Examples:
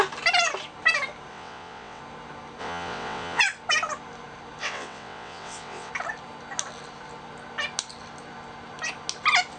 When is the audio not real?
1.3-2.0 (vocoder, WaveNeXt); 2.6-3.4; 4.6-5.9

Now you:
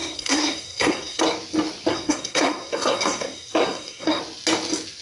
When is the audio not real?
0.0-1.2 (codec, SNAC); 1.9-4.2

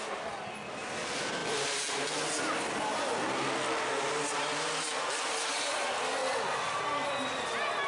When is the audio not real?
none

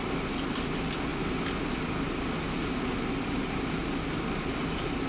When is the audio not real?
none

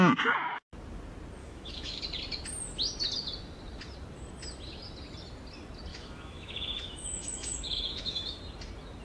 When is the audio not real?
1.4-2.0 (autoencoder, DAC-VAE); 5.9-8.4